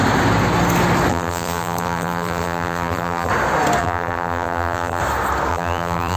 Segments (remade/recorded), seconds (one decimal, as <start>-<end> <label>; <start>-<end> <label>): 0.0-1.1 recorded; 1.1-3.3 remade; 3.3-3.8 recorded; 3.8-5.0 remade; 5.0-5.5 recorded; 5.5-6.2 remade